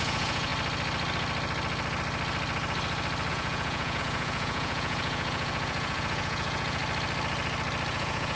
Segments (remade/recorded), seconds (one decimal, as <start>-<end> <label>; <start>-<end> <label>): 0.0-0.5 remade; 0.5-3.3 recorded; 3.3-6.8 remade; 6.8-7.9 recorded; 7.9-8.4 remade